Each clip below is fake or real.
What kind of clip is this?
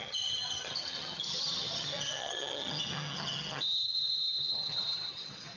fake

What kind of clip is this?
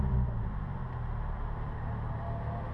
real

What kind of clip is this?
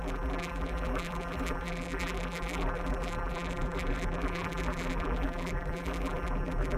fake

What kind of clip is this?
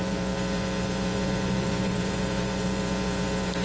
fake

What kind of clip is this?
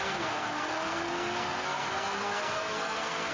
fake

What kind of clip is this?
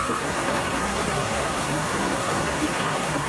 fake